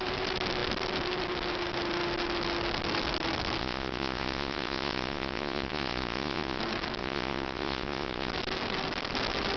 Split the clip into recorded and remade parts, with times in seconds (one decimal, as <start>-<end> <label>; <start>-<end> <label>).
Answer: 0.0-3.6 recorded; 3.6-6.6 remade; 6.6-7.0 recorded; 7.0-8.3 remade; 8.3-9.6 recorded